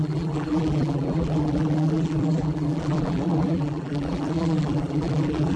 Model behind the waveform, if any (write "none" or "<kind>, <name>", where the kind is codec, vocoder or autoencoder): vocoder, BigVGAN v2